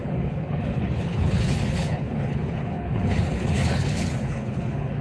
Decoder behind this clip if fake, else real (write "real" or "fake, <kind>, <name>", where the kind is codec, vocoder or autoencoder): fake, codec, HILCodec